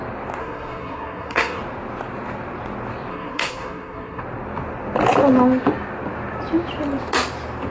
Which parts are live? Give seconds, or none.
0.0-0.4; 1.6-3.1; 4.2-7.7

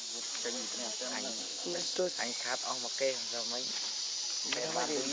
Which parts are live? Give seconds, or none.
0.0-1.4; 2.2-5.1